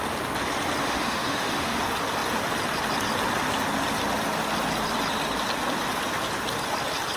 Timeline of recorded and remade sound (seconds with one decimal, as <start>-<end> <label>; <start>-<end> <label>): 0.0-0.8 recorded; 0.8-1.8 remade; 1.8-7.2 recorded